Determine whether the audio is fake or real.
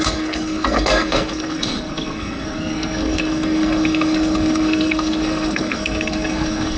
fake